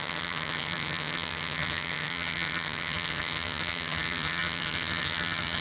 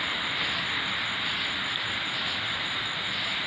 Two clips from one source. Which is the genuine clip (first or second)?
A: second